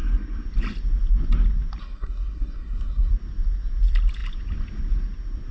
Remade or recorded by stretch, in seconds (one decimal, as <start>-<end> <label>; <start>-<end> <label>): 0.0-1.8 recorded; 1.8-3.1 remade; 3.1-5.5 recorded